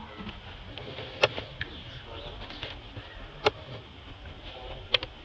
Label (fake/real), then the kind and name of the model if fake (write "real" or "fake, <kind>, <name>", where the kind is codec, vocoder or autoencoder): real